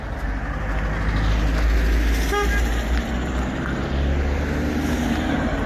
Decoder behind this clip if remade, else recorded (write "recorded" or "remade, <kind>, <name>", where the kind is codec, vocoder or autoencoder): recorded